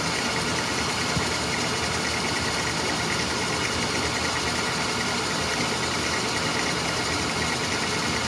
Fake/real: real